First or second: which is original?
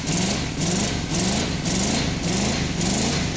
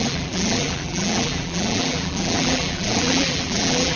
first